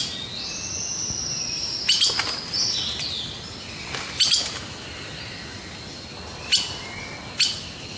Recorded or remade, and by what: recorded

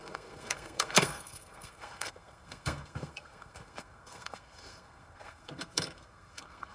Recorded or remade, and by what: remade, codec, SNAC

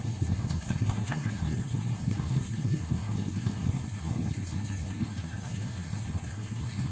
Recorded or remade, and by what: remade, codec, SNAC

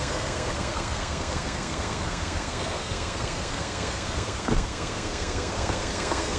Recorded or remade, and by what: remade, codec, SNAC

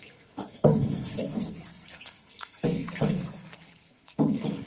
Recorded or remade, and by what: remade, codec, SNAC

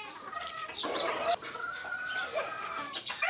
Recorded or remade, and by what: recorded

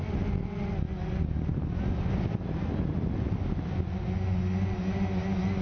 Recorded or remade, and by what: recorded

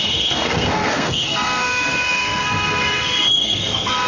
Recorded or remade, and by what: remade, codec, SNAC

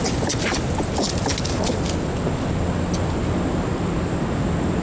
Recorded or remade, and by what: recorded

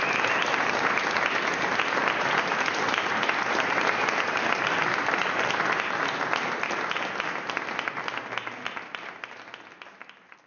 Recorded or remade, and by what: recorded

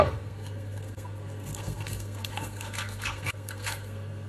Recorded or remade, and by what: remade, codec, SNAC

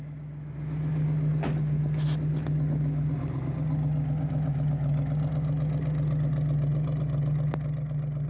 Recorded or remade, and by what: recorded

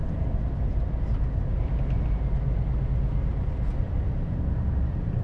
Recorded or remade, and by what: recorded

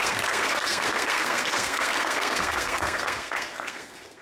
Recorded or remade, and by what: remade, codec, SNAC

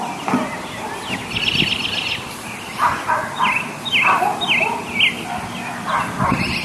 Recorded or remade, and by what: recorded